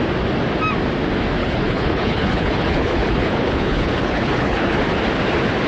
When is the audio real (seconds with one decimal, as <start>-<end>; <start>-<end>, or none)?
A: 0.0-1.4; 4.8-5.7